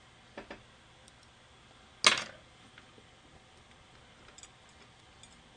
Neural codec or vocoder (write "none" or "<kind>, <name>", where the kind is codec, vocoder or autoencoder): none